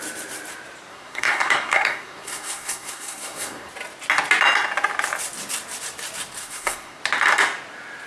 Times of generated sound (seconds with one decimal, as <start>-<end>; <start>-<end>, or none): 0.9-3.7; 6.4-7.0